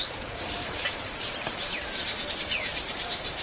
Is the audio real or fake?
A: fake